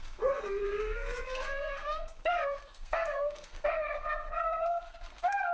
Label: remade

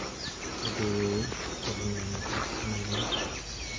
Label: recorded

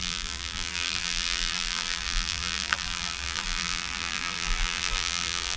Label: remade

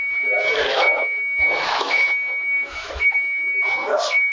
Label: remade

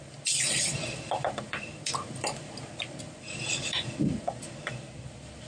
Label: remade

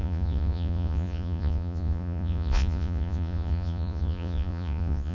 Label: remade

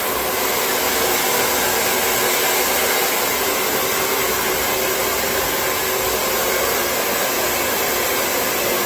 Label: recorded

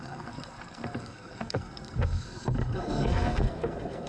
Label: remade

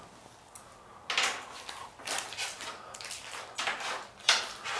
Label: recorded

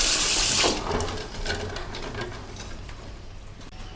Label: recorded